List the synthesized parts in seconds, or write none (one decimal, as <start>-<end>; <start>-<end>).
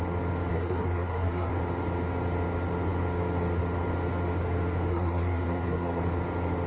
0.5-1.5; 4.9-6.0